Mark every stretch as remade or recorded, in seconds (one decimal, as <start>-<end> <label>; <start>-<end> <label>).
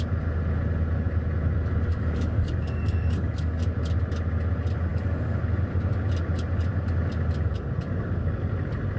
0.0-1.9 recorded; 1.9-3.6 remade; 3.6-4.9 recorded; 4.9-5.4 remade; 5.4-9.0 recorded